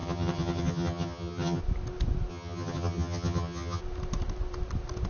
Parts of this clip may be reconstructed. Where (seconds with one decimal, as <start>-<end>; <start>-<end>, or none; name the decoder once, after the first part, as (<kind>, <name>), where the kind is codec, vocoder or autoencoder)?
0.0-1.6 (vocoder, HiFi-GAN); 2.3-3.8